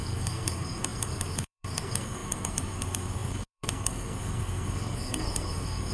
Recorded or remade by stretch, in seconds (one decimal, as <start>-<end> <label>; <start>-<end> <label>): 0.0-5.9 remade